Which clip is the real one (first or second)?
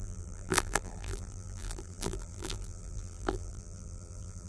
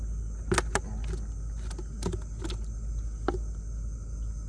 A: second